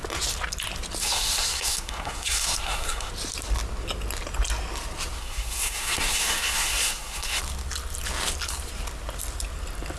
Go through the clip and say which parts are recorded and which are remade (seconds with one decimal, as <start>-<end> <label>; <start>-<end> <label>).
0.0-1.0 recorded; 1.0-3.1 remade; 3.1-5.2 recorded; 5.2-7.4 remade; 7.4-10.0 recorded